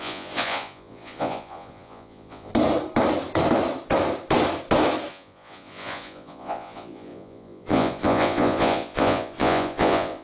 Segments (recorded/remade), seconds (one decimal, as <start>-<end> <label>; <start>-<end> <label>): 0.0-2.5 remade; 2.5-5.1 recorded; 5.1-10.2 remade